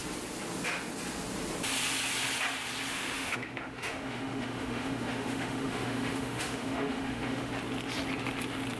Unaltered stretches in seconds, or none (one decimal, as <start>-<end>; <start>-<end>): 0.0-2.9; 7.5-8.8